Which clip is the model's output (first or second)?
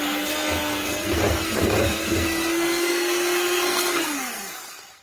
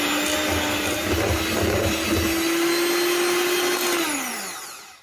first